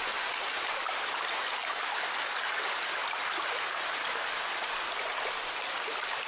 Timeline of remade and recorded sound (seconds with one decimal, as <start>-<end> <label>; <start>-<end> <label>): 0.0-6.3 recorded